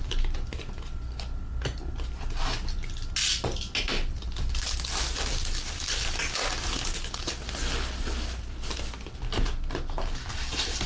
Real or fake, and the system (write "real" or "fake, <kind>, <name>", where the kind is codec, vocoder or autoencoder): real